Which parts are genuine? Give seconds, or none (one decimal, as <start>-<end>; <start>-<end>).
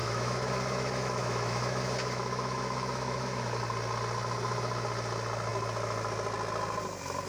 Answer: 3.6-7.3